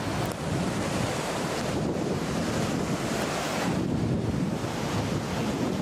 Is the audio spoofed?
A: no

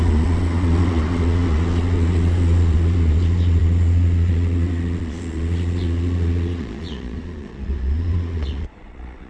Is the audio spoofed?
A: yes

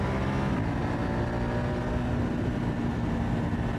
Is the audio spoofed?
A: no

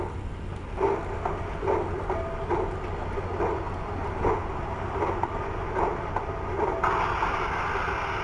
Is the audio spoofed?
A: no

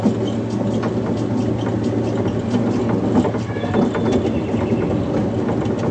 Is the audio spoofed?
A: no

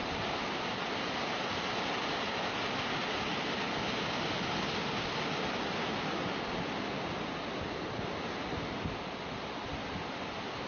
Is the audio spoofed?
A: no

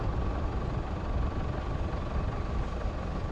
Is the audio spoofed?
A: no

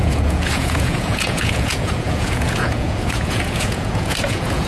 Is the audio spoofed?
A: yes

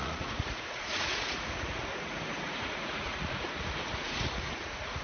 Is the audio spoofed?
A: yes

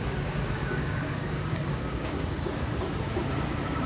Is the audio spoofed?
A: yes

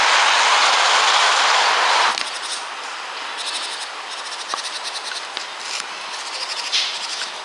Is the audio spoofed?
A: no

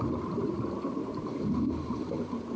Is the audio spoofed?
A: yes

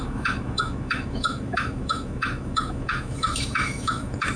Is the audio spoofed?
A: yes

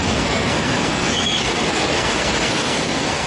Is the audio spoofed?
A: yes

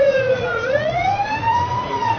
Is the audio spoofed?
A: yes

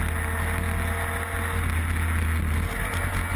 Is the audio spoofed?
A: no